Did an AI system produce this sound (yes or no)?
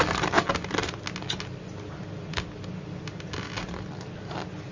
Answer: no